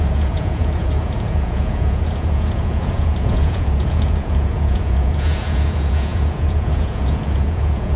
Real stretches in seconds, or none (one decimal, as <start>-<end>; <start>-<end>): none